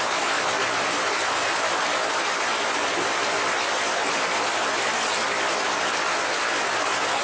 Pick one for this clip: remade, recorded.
recorded